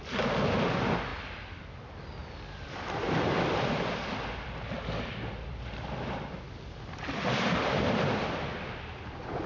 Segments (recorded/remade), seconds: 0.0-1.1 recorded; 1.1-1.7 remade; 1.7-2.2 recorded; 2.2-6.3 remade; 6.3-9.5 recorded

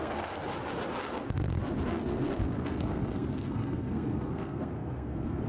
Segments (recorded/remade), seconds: 0.0-0.4 remade; 0.4-1.9 recorded; 1.9-5.5 remade

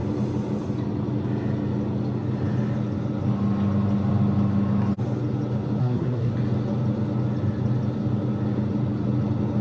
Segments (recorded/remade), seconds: 0.0-5.8 recorded; 5.8-6.3 remade; 6.3-9.6 recorded

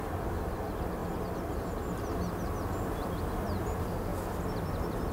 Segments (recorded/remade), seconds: 0.0-5.1 recorded

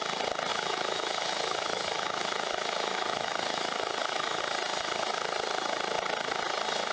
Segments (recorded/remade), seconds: 0.0-0.5 recorded; 0.5-4.4 remade; 4.4-6.9 recorded

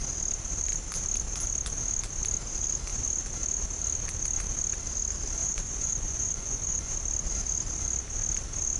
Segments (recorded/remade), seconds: 0.0-5.4 recorded; 5.4-6.9 remade; 6.9-8.8 recorded